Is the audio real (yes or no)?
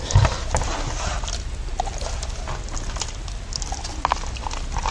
yes